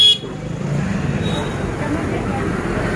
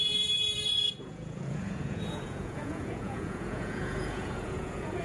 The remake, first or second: second